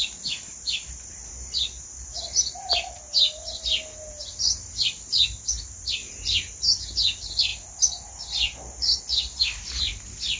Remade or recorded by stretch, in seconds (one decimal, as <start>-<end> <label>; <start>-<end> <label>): 0.0-6.0 recorded; 6.0-6.7 remade; 6.7-10.4 recorded